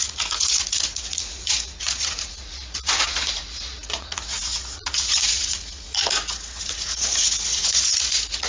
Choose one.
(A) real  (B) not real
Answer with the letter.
B